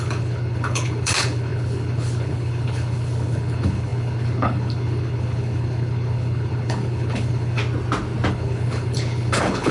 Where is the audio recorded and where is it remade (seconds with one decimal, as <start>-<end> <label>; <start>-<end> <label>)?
0.0-7.6 remade; 7.6-8.3 recorded; 8.3-9.7 remade